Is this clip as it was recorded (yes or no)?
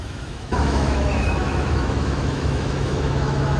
no